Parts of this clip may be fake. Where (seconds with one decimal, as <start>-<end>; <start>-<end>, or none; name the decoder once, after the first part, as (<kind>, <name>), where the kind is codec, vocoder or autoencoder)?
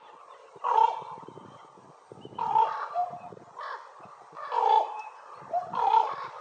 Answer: none